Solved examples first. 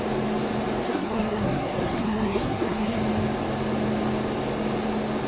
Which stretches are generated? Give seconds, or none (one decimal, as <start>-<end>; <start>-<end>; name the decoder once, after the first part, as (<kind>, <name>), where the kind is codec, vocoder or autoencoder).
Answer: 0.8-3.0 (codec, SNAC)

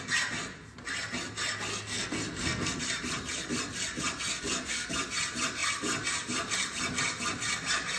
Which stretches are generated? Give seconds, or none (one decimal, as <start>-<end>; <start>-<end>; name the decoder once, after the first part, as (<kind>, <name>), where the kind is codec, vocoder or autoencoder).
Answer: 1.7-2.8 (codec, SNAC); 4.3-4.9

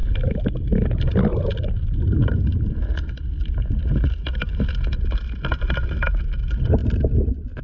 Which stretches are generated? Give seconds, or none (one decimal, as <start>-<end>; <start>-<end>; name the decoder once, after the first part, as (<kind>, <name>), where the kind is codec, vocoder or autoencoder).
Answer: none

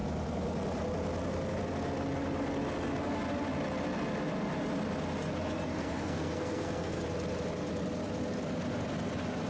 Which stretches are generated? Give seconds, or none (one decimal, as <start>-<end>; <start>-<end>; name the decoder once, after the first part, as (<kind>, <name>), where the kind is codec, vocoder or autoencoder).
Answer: 5.8-7.0 (codec, SNAC)